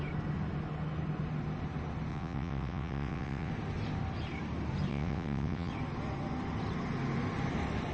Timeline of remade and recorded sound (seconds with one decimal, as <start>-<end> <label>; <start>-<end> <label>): 0.0-2.1 recorded; 2.1-3.5 remade; 3.5-4.9 recorded; 4.9-5.7 remade; 5.7-7.9 recorded